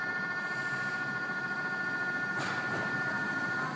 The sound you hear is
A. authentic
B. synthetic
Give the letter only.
B